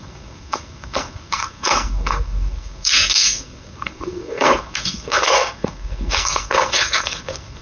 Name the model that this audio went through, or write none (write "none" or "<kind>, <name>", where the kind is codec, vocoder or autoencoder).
codec, SNAC